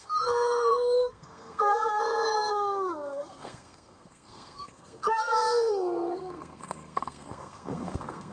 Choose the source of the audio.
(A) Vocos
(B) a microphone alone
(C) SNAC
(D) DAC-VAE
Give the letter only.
C